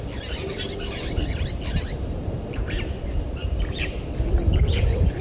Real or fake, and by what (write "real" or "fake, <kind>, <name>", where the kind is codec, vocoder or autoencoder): real